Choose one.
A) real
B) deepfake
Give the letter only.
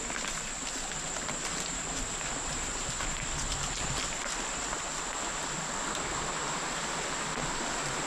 A